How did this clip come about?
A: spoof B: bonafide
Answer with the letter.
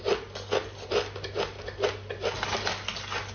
B